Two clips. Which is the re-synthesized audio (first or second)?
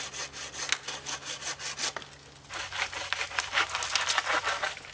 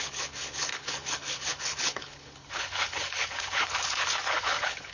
second